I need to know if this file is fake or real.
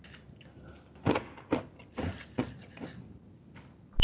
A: real